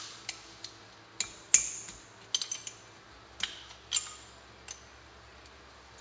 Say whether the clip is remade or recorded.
recorded